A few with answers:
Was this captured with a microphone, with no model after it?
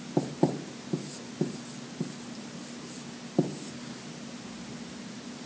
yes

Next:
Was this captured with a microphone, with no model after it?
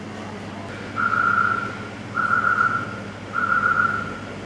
yes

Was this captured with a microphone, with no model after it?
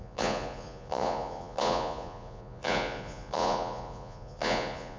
no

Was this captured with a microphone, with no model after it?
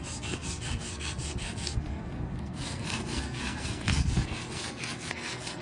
no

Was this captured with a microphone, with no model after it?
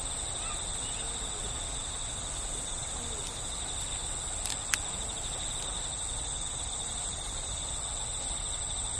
yes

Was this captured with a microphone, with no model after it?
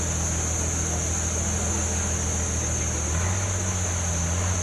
yes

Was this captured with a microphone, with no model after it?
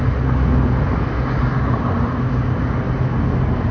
yes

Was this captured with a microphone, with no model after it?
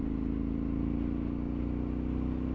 yes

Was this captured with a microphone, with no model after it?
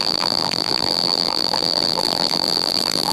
no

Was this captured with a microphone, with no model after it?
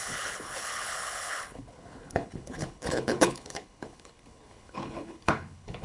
no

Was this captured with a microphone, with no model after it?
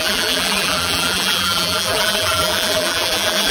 no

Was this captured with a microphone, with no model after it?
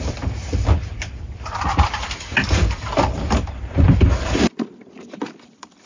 no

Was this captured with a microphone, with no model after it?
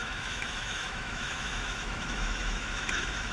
no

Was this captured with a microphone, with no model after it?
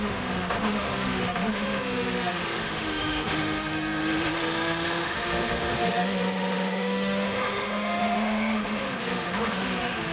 no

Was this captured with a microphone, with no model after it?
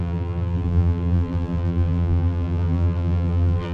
no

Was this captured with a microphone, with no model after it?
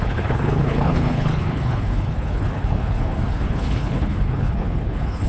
no